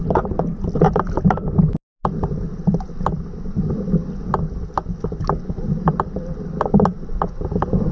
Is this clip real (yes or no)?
yes